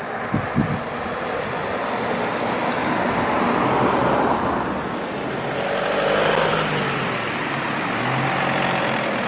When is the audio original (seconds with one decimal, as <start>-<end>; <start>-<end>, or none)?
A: 0.0-9.3